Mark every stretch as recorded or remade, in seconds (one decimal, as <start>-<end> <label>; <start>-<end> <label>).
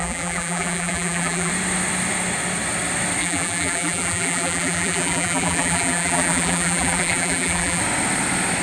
0.0-1.5 remade; 1.5-3.2 recorded; 3.2-7.8 remade; 7.8-8.6 recorded